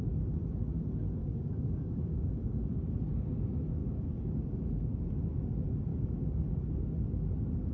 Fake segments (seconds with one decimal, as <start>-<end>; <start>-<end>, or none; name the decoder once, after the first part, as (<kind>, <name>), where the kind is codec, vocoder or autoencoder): 1.2-2.7 (codec, DAC); 3.8-5.0; 5.9-6.5